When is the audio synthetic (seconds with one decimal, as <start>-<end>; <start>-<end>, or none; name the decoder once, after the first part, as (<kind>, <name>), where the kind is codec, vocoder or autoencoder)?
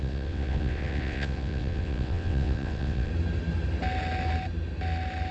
0.0-3.1 (vocoder, WaveNeXt)